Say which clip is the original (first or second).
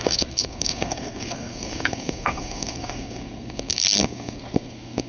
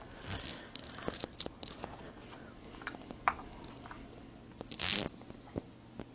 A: second